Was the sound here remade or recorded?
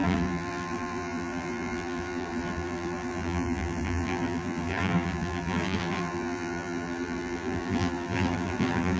remade